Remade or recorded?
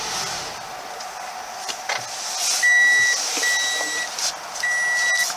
recorded